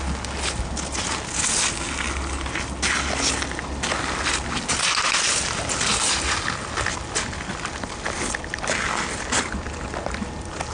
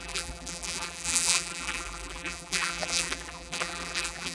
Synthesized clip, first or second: second